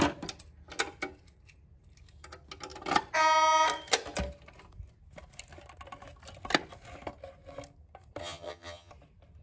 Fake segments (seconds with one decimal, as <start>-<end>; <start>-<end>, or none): 8.2-8.9